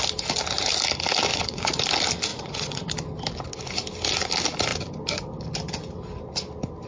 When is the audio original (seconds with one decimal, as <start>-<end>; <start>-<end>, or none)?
0.0-1.3; 1.8-2.3; 2.9-6.9